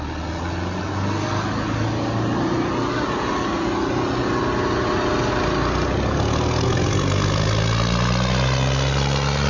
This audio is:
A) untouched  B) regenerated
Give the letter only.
A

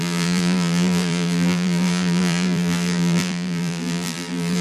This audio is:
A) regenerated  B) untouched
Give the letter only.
A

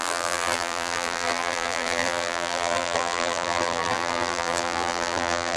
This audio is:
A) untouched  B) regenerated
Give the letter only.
B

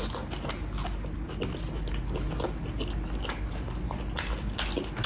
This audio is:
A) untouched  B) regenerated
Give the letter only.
A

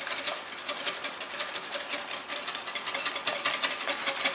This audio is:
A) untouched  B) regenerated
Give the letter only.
A